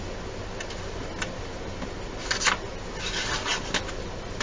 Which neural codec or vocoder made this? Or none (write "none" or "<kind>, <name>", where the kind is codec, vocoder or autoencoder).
none